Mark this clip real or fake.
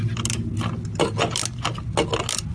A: real